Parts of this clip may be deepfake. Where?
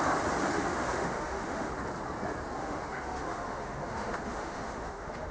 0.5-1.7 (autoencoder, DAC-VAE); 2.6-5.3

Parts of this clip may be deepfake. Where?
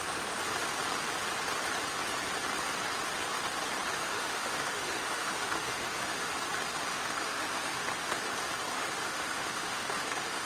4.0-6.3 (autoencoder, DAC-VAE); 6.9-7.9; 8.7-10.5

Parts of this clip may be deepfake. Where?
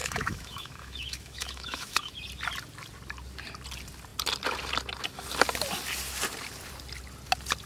0.0-2.1 (autoencoder, DAC-VAE)